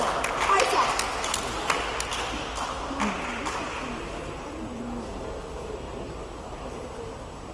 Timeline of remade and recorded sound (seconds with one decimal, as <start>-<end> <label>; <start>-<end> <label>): 0.0-7.5 recorded